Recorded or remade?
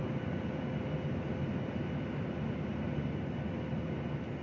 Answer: recorded